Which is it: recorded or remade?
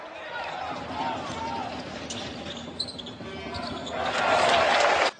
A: recorded